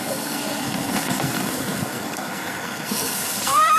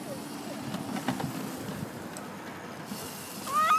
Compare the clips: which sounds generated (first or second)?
first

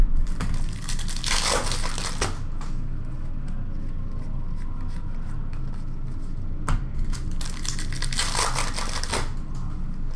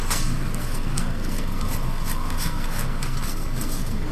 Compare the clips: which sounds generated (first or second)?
second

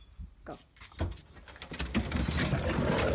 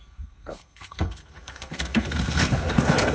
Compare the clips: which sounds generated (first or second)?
second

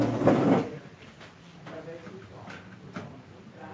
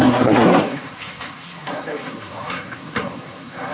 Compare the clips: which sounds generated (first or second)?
second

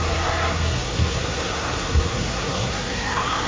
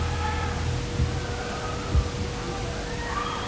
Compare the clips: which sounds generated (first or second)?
first